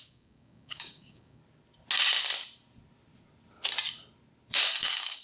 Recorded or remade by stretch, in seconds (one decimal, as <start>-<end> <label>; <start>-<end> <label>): 0.0-1.4 remade; 1.4-4.5 recorded; 4.5-5.2 remade